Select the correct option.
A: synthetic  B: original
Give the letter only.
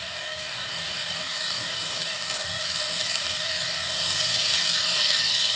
A